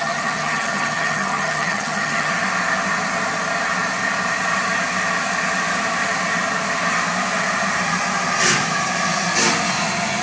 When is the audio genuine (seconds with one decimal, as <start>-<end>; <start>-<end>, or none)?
2.3-10.2